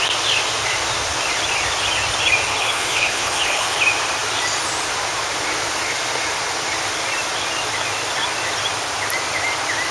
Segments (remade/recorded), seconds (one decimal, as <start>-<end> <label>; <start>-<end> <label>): 0.0-2.5 recorded; 2.5-3.8 remade; 3.8-9.9 recorded